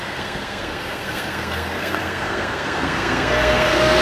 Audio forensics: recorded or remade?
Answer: remade